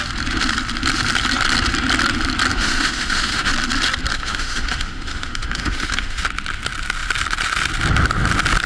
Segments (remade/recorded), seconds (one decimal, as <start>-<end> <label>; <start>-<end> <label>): 0.0-2.5 recorded; 2.5-3.5 remade; 3.5-4.1 recorded; 4.1-6.2 remade; 6.2-8.7 recorded